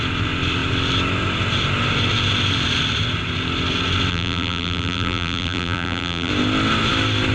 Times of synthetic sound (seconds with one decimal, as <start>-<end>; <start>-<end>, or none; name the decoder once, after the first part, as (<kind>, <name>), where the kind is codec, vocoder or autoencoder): 4.1-6.3 (vocoder, BigVGAN v2)